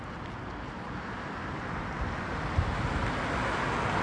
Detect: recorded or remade recorded